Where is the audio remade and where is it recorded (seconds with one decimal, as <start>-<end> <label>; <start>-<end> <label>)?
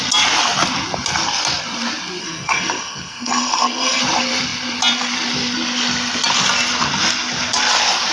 0.0-2.2 recorded; 2.2-4.0 remade; 4.0-8.1 recorded